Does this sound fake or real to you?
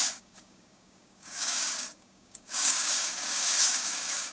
fake